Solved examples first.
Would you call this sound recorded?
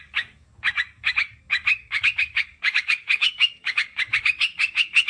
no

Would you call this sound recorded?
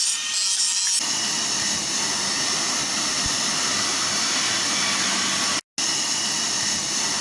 yes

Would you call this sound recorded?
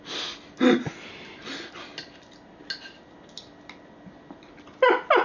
yes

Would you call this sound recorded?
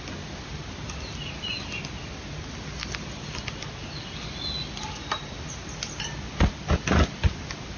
yes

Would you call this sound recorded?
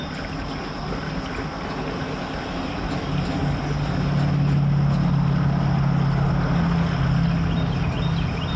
yes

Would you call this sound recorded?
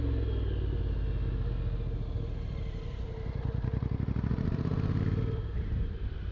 yes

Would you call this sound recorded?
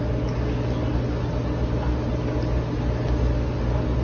yes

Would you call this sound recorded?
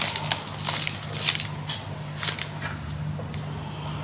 yes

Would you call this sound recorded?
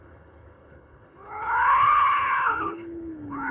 no